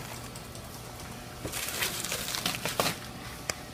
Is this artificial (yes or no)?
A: no